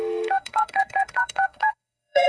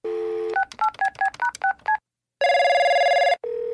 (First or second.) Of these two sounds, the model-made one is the first